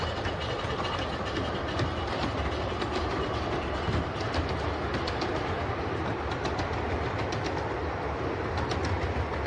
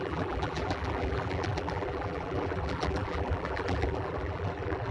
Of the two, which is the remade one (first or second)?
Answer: second